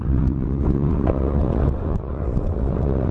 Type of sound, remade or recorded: remade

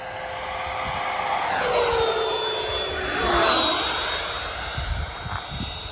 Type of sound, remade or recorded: recorded